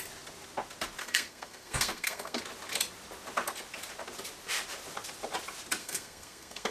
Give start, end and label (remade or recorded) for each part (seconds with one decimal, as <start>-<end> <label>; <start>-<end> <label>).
0.0-1.0 recorded; 1.0-2.4 remade; 2.4-5.8 recorded; 5.8-6.7 remade